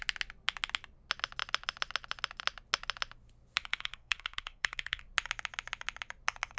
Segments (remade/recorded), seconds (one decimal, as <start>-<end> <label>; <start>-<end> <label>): 0.0-3.7 recorded; 3.7-5.0 remade; 5.0-6.6 recorded